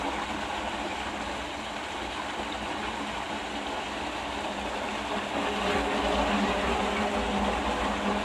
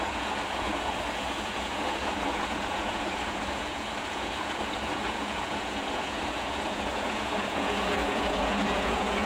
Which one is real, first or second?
first